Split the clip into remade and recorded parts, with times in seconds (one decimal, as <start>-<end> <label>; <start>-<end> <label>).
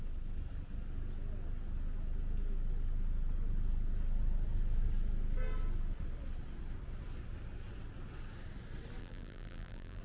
0.0-9.0 recorded; 9.0-10.0 remade